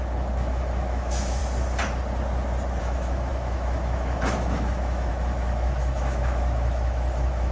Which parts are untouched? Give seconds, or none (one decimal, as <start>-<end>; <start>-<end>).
1.4-2.8